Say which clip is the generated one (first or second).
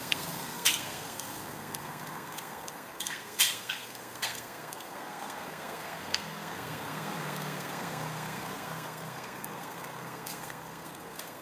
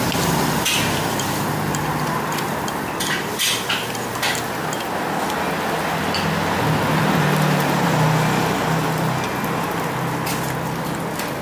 first